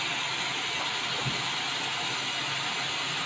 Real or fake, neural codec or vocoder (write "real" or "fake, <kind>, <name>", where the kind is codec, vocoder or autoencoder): real